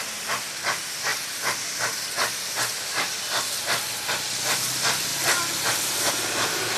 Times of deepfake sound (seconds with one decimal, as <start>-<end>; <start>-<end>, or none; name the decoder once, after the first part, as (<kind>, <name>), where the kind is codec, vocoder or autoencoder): 1.1-3.6 (vocoder, BigVGAN v2); 5.1-6.1